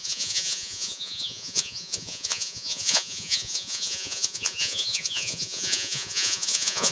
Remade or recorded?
remade